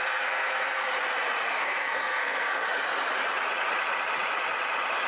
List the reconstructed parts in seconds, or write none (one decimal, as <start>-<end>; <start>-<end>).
0.0-0.9; 1.6-2.6

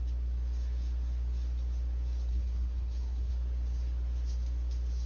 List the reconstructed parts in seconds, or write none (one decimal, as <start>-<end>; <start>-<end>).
2.3-3.3

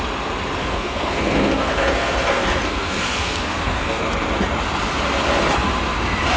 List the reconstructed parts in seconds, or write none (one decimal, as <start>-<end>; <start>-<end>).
0.6-4.0

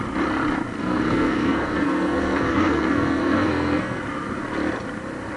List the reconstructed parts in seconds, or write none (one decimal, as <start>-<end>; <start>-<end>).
0.8-4.0

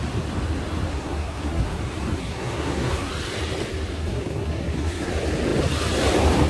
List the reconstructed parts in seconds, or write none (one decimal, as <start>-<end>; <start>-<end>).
0.9-1.8; 2.2-3.1; 3.9-5.1